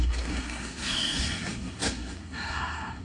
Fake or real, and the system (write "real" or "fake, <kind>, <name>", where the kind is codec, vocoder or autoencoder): fake, codec, SNAC